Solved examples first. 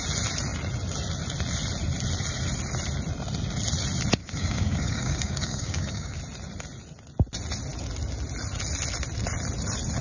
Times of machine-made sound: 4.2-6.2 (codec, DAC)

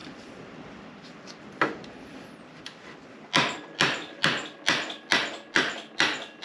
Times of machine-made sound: 0.0-2.6 (vocoder, BigVGAN v2)